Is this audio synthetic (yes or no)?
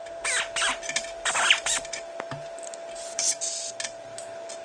no